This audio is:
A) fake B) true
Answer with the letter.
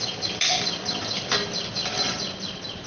B